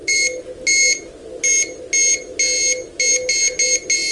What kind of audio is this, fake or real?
real